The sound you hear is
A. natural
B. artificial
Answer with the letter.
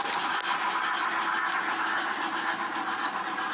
A